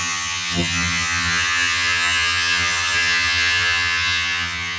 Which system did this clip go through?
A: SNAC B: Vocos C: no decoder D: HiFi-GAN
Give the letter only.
D